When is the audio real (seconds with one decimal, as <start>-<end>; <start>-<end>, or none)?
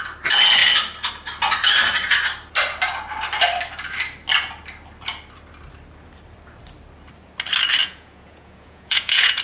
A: 0.0-7.8